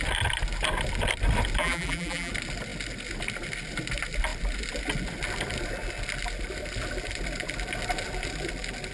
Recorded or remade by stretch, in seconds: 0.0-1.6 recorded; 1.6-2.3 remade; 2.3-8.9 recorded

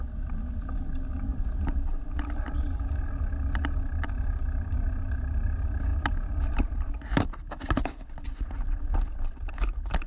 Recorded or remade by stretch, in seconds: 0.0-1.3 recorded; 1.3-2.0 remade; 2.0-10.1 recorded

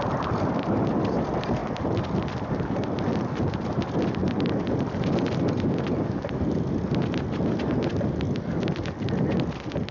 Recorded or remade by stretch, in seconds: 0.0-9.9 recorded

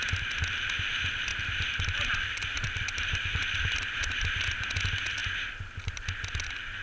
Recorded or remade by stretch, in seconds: 0.0-1.3 recorded; 1.3-3.4 remade; 3.4-5.2 recorded; 5.2-5.7 remade; 5.7-6.8 recorded

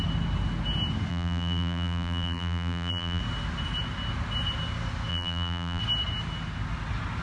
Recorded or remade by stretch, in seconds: 0.0-1.1 recorded; 1.1-3.2 remade; 3.2-5.1 recorded; 5.1-5.8 remade; 5.8-7.2 recorded